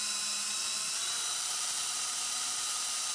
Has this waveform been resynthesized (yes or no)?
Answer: yes